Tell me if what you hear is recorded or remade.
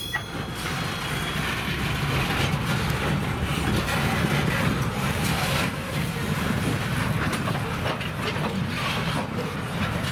recorded